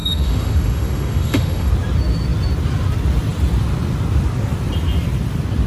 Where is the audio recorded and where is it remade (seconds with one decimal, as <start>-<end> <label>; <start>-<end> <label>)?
0.0-1.7 remade; 1.7-5.7 recorded